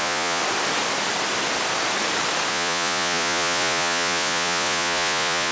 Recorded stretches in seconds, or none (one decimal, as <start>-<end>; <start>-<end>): 0.4-2.5